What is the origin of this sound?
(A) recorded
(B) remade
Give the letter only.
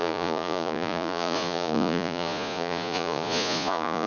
B